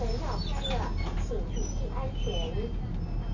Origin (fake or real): real